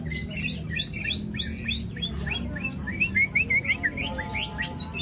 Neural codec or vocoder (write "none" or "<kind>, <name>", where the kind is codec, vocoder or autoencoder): none